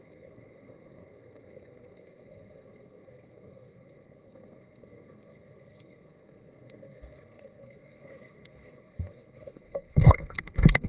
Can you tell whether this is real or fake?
fake